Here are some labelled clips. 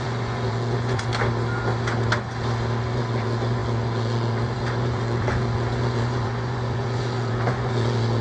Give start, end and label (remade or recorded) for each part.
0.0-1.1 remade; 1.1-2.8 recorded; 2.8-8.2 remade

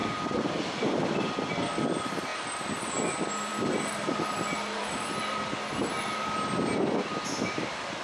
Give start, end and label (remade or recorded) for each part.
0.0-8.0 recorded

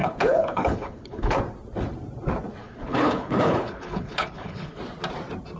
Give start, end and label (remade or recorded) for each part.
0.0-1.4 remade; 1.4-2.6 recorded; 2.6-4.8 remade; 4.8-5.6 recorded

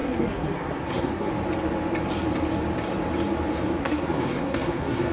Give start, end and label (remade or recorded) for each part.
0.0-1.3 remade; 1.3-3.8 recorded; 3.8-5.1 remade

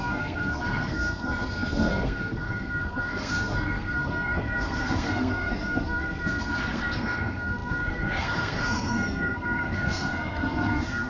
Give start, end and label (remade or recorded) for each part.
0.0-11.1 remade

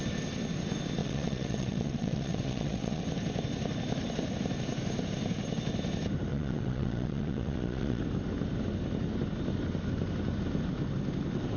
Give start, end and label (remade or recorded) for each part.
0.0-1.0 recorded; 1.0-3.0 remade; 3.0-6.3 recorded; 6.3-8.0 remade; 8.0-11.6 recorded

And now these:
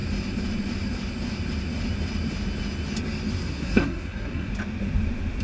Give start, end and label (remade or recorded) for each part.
0.0-3.4 recorded; 3.4-4.5 remade; 4.5-5.4 recorded